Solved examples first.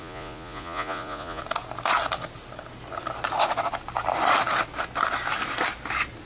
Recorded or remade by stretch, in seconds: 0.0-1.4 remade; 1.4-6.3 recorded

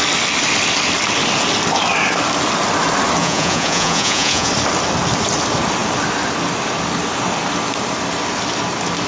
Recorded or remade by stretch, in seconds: 0.0-3.2 recorded; 3.2-4.5 remade; 4.5-9.1 recorded

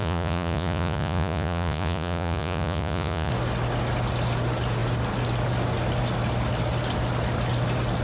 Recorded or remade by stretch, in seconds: 0.0-3.3 remade; 3.3-8.0 recorded